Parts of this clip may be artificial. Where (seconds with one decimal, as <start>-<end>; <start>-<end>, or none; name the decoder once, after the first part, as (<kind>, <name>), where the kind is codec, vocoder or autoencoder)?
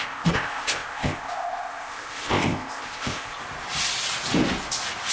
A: 0.0-3.4 (codec, ZipCodec)